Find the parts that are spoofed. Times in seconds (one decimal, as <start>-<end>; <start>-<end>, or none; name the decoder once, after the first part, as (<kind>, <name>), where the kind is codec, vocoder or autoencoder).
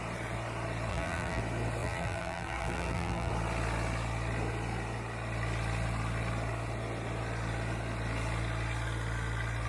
0.9-1.4 (vocoder, BigVGAN v2); 1.8-3.3